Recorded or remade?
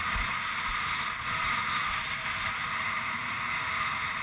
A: recorded